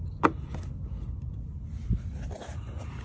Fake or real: real